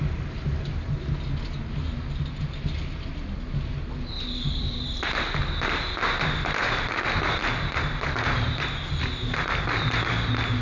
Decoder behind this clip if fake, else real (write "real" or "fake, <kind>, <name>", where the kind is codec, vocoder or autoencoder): real